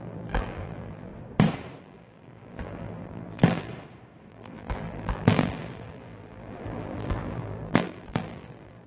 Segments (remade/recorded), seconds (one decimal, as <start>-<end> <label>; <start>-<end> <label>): 0.0-1.1 remade; 1.1-1.8 recorded; 1.8-3.7 remade; 3.7-4.3 recorded; 4.3-8.9 remade